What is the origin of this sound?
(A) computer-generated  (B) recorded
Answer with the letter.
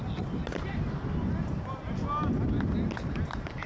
B